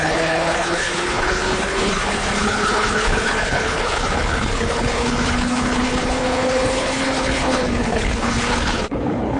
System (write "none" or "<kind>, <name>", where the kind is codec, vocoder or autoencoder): codec, HILCodec